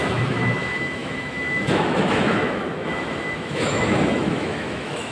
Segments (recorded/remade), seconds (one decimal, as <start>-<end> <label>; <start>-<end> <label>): 0.0-5.1 remade